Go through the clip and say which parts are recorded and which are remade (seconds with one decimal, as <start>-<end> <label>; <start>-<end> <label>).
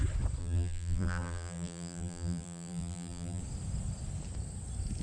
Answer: 0.0-0.4 recorded; 0.4-3.4 remade; 3.4-5.0 recorded